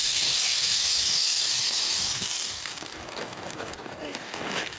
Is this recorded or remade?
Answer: remade